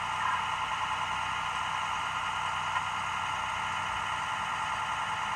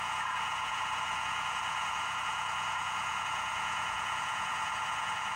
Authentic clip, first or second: first